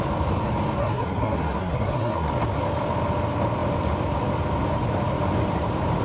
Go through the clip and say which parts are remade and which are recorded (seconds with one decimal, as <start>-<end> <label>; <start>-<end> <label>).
0.0-0.8 recorded; 0.8-2.3 remade; 2.3-6.0 recorded